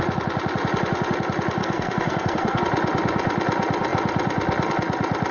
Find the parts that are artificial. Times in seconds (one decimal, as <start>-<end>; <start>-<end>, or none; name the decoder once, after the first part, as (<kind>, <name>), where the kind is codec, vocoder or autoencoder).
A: 1.6-2.6 (codec, SNAC)